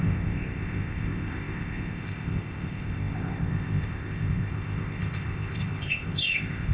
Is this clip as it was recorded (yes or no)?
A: no